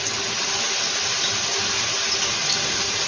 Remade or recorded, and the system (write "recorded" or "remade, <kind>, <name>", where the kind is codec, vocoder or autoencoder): recorded